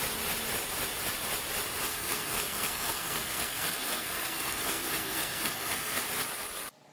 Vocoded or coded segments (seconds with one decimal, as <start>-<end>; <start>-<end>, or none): 1.9-6.0